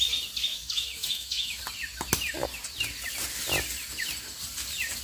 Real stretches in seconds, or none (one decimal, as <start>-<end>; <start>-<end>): 0.0-0.5; 1.6-5.0